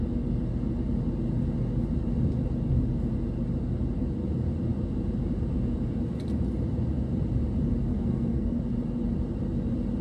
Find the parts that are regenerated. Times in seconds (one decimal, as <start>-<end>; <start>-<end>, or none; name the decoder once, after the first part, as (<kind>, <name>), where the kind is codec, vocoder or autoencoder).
7.9-8.6 (codec, SNAC)